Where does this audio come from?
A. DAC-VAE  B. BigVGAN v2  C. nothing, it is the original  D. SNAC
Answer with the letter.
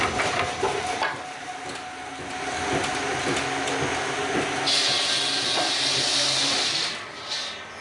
C